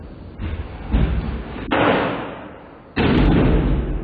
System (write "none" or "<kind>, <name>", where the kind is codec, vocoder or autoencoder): none